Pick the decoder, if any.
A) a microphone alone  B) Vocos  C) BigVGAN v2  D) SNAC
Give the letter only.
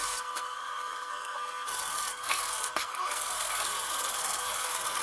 D